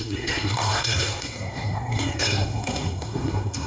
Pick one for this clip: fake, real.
fake